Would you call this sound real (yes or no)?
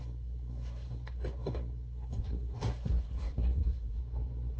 no